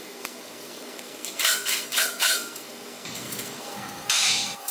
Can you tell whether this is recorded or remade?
remade